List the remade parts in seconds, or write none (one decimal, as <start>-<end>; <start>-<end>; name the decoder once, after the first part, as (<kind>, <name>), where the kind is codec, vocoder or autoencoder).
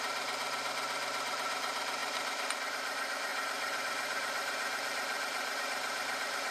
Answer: 0.0-6.5 (vocoder, BigVGAN v2)